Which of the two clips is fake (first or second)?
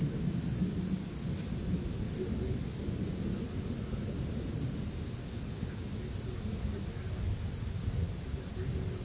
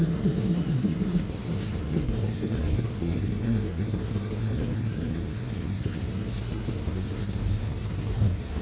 second